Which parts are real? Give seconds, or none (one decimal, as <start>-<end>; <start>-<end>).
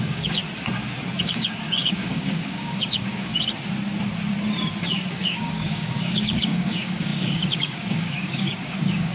0.4-1.2; 3.3-5.1